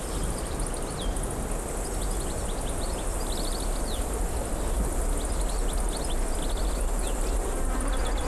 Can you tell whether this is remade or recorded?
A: recorded